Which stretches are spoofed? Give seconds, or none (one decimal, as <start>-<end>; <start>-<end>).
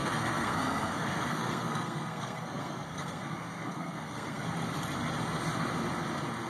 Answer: 0.0-4.4